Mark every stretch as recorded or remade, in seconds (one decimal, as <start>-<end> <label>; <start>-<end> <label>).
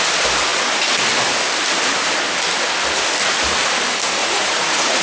0.0-4.2 recorded; 4.2-5.0 remade